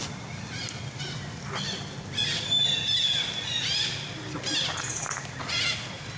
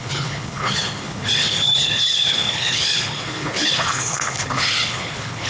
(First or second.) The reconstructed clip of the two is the second